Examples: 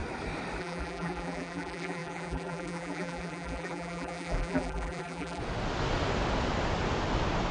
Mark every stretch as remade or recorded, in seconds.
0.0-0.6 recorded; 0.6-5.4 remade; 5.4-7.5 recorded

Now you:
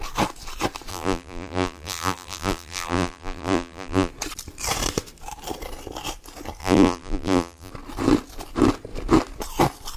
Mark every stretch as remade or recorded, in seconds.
0.0-0.9 recorded; 0.9-4.1 remade; 4.1-6.6 recorded; 6.6-7.7 remade; 7.7-10.0 recorded

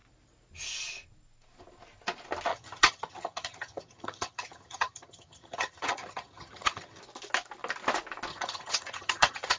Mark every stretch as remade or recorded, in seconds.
0.0-2.5 recorded; 2.5-7.0 remade; 7.0-8.3 recorded; 8.3-9.6 remade

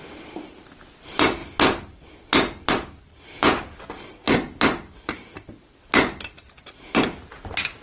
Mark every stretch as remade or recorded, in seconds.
0.0-7.8 recorded

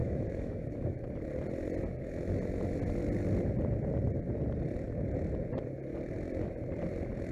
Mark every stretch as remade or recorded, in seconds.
0.0-1.0 remade; 1.0-7.3 recorded

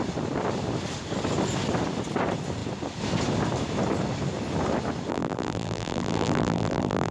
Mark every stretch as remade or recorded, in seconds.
0.0-5.1 recorded; 5.1-7.1 remade

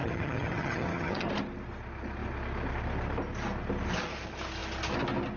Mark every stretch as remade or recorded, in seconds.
0.0-1.3 remade; 1.3-5.4 recorded